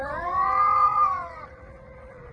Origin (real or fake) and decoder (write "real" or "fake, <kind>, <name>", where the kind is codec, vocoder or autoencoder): fake, vocoder, WaveNeXt